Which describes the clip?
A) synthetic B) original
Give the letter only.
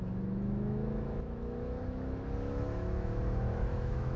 A